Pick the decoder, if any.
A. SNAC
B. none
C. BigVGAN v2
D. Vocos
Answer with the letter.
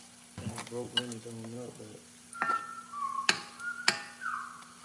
B